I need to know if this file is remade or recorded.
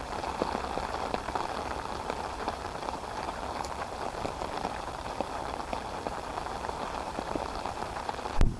remade